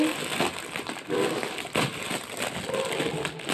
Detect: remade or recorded recorded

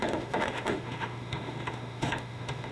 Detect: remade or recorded remade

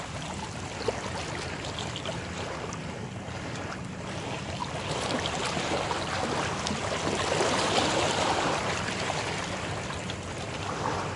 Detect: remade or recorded recorded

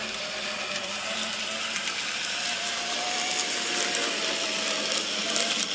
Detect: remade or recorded recorded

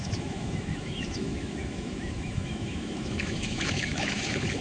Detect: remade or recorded remade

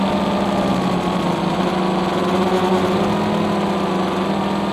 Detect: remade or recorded recorded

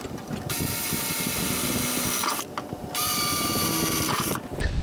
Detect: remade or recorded recorded